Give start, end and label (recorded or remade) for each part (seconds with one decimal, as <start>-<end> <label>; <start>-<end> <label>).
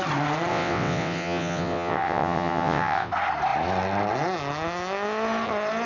0.0-0.5 recorded; 0.5-3.1 remade; 3.1-5.9 recorded